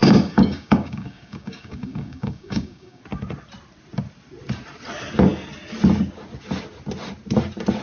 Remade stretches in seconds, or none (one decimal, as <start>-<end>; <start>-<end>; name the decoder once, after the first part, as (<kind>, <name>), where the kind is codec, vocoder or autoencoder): 0.0-3.0 (codec, DAC)

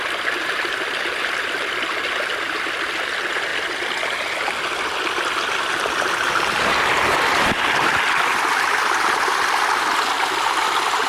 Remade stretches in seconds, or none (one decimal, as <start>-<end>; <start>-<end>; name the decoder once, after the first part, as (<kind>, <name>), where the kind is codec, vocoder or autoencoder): none

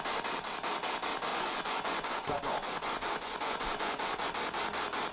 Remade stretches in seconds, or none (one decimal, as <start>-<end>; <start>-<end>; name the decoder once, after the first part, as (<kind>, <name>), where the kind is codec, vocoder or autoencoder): 1.3-4.3 (vocoder, Vocos)

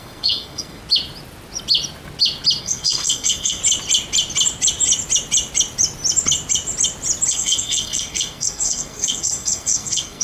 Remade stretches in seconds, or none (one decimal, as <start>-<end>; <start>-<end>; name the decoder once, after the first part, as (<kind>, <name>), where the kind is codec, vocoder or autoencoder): 0.0-0.8 (codec, SNAC); 2.6-3.6; 7.3-10.2

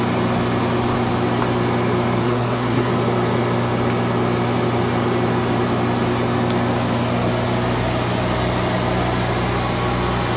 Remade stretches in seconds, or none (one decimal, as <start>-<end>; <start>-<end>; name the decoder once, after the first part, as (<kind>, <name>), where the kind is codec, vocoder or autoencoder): 2.2-2.9 (codec, SNAC)

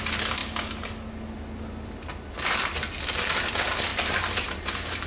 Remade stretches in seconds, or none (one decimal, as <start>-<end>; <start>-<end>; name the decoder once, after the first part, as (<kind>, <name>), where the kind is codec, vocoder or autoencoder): 3.9-5.1 (vocoder, BigVGAN v2)

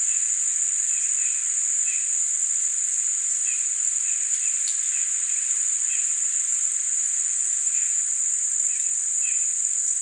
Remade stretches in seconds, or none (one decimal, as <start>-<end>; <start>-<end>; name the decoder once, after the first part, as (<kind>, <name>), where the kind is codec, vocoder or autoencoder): 7.0-8.0 (autoencoder, DAC-VAE)